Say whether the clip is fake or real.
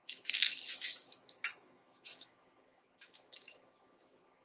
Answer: fake